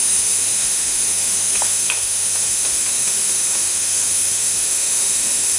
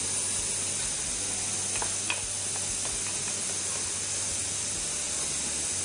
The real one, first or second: second